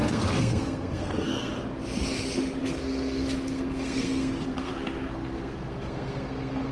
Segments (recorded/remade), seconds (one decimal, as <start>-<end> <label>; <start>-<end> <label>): 0.0-1.5 remade; 1.5-2.6 recorded; 2.6-6.7 remade